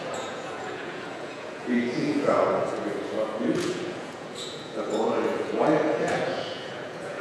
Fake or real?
fake